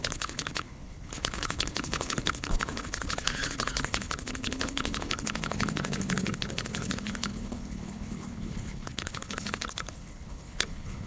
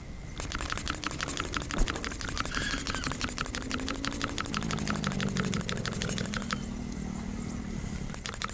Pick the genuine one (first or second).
second